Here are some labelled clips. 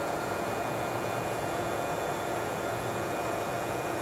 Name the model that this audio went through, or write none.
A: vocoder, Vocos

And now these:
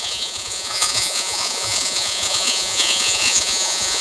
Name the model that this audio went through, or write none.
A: vocoder, Vocos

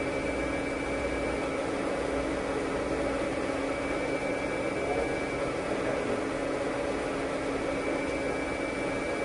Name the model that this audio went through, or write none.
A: none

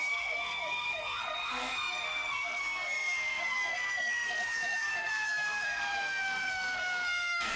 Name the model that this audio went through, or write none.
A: codec, SNAC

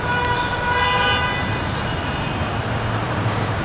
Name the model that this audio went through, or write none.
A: none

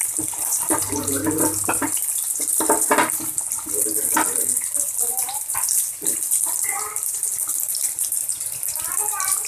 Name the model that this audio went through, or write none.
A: none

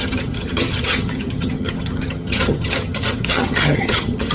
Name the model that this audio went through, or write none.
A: vocoder, HiFi-GAN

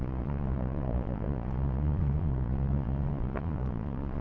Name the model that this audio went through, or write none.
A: vocoder, Vocos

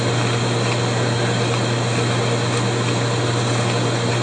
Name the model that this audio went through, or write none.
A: none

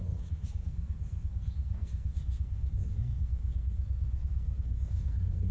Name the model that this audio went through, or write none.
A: codec, SNAC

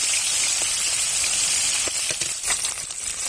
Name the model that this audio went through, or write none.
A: none